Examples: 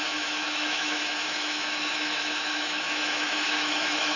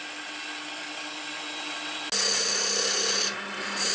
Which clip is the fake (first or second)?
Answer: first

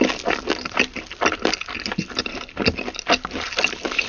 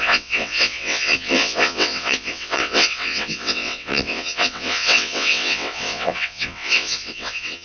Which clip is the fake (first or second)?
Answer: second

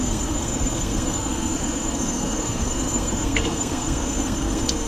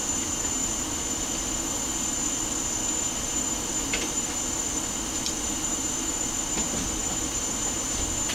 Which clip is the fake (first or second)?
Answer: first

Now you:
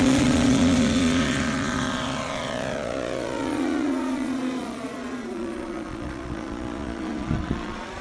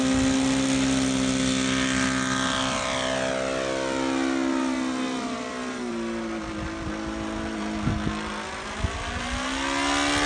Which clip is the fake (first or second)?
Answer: first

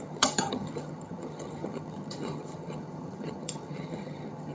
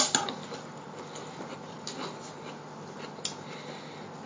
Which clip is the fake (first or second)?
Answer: first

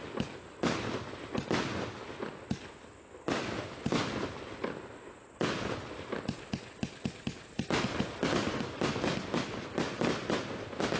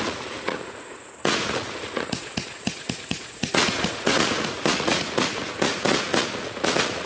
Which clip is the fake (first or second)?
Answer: second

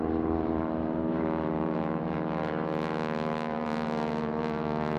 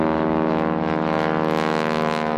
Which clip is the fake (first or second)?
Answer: first